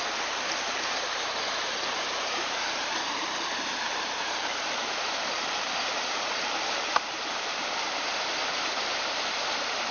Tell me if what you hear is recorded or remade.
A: remade